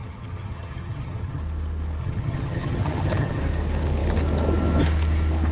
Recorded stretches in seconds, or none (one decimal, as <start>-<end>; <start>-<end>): 1.4-2.0; 3.4-5.5